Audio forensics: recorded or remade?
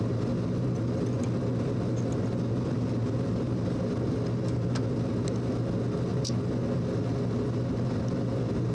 recorded